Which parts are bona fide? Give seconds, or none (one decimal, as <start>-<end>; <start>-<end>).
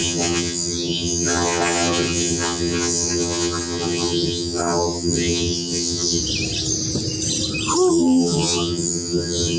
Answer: 6.2-7.9